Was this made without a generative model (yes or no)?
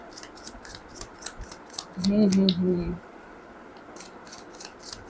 yes